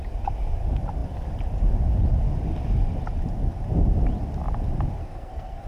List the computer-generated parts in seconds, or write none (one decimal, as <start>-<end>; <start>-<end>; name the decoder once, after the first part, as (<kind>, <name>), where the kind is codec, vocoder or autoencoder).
5.0-5.7 (codec, SNAC)